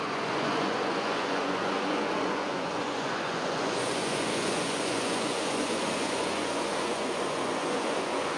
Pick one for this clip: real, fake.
fake